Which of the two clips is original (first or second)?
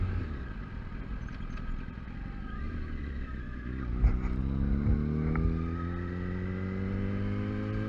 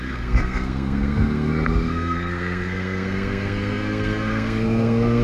first